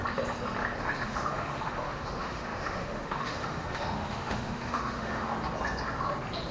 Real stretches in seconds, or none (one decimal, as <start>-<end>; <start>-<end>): 0.0-0.8; 5.3-6.5